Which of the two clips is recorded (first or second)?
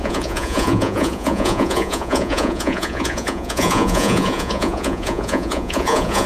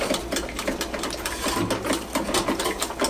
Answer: second